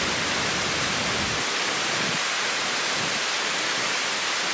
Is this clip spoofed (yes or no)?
yes